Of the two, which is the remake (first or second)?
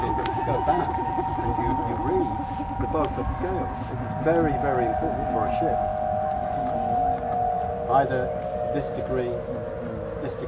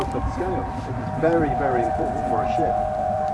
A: second